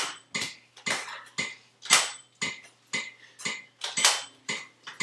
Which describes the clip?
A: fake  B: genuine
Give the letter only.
B